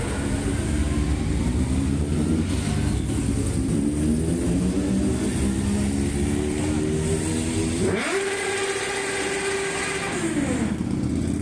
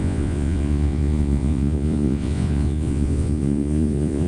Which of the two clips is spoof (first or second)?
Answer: second